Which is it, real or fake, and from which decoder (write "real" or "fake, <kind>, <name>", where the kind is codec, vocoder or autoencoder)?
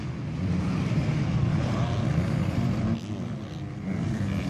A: real